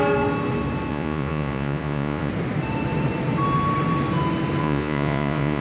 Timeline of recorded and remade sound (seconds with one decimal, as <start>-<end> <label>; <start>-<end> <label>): 0.0-0.9 recorded; 0.9-2.3 remade; 2.3-4.6 recorded; 4.6-5.6 remade